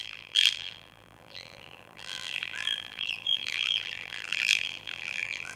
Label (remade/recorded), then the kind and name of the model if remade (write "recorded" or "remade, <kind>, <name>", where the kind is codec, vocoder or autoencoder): remade, vocoder, BigVGAN v2